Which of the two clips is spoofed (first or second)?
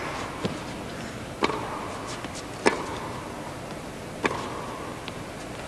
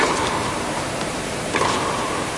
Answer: second